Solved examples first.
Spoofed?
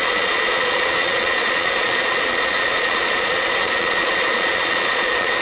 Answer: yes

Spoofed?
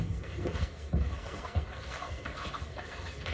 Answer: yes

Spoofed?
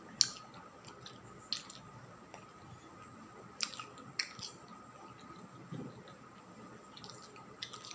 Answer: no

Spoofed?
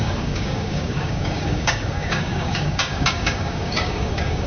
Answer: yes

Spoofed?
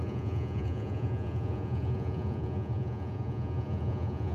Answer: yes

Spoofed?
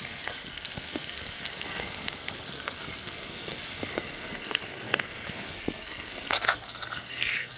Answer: yes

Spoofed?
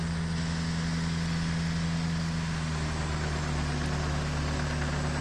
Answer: no